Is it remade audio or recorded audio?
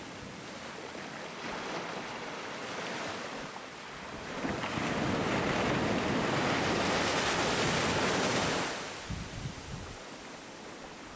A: recorded